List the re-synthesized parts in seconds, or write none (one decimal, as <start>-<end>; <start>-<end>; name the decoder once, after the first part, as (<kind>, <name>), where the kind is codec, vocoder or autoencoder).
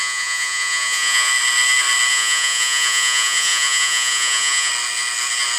0.0-1.3 (vocoder, Vocos); 2.1-4.7